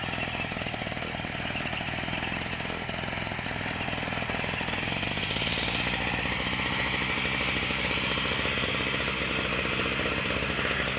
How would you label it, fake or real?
real